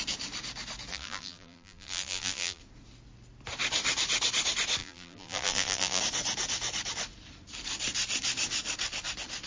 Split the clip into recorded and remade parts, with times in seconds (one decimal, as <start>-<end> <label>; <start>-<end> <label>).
0.0-0.9 recorded; 0.9-2.6 remade; 2.6-4.8 recorded; 4.8-6.0 remade; 6.0-9.5 recorded